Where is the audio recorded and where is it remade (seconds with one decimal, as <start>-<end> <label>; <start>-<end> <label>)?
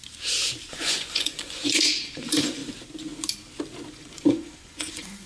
0.0-0.7 recorded; 0.7-2.6 remade; 2.6-3.9 recorded; 3.9-5.3 remade